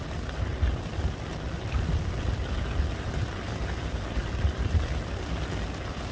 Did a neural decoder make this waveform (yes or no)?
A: no